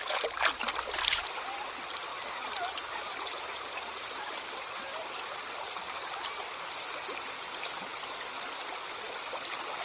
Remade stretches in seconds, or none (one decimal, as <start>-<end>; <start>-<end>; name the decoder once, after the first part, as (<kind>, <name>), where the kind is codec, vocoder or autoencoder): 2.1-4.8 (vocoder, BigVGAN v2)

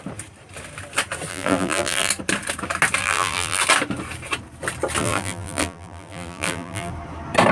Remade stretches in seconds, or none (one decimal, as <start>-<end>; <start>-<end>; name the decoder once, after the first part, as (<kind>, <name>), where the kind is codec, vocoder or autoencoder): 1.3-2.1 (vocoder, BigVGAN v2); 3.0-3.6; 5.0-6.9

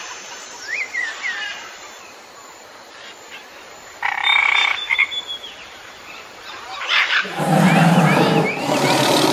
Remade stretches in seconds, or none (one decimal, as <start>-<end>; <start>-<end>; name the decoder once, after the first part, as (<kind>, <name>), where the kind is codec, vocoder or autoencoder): 0.0-9.3 (vocoder, BigVGAN v2)

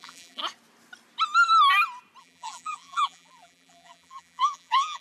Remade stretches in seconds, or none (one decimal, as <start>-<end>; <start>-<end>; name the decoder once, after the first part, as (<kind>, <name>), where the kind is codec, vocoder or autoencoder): 0.0-0.4 (vocoder, BigVGAN v2); 2.2-5.0

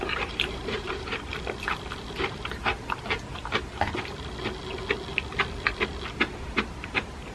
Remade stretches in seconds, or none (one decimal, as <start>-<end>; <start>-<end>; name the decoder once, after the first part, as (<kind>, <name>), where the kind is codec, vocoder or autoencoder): 0.0-1.3 (vocoder, BigVGAN v2); 2.1-2.7

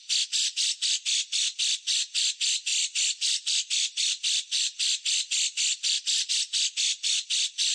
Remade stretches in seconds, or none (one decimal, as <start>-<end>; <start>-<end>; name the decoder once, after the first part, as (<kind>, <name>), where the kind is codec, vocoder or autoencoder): 2.7-6.3 (vocoder, BigVGAN v2)